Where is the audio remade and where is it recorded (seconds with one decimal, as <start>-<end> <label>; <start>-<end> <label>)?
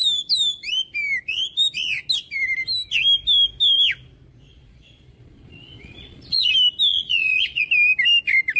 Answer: 0.0-4.5 recorded; 4.5-6.5 remade; 6.5-6.9 recorded; 6.9-7.7 remade; 7.7-8.6 recorded